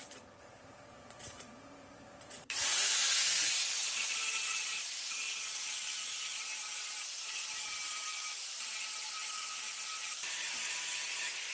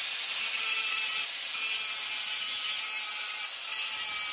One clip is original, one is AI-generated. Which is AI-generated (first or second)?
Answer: first